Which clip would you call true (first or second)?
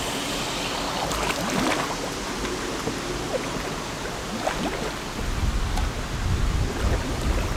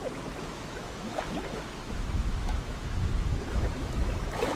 first